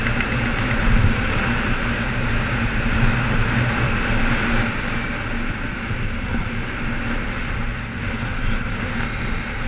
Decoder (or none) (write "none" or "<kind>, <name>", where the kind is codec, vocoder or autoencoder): none